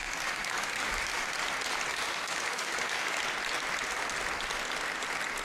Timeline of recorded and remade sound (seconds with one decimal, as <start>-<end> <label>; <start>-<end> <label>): 0.0-1.3 remade; 1.3-1.9 recorded; 1.9-3.2 remade; 3.2-5.4 recorded